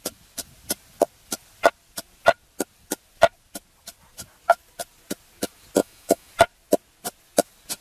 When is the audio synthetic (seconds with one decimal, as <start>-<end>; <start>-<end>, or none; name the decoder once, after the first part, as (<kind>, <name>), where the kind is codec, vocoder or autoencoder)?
5.8-6.3 (autoencoder, DAC-VAE)